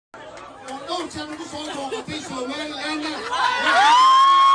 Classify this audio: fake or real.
real